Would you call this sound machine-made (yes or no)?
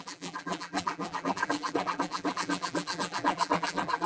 yes